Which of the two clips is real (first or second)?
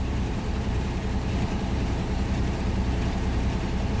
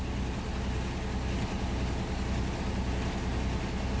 second